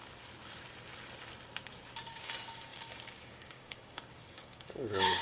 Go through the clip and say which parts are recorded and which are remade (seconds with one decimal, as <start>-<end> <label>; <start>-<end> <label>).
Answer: 0.0-2.1 recorded; 2.1-5.2 remade